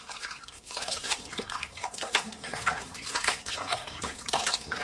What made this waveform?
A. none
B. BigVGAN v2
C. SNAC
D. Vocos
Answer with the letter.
C